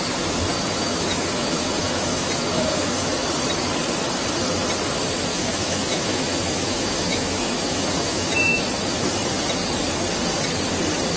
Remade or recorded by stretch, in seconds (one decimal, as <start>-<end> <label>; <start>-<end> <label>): 0.0-0.8 recorded; 0.8-3.1 remade; 3.1-5.3 recorded; 5.3-8.6 remade; 8.6-11.2 recorded